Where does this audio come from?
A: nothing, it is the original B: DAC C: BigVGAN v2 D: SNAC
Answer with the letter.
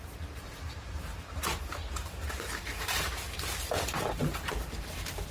C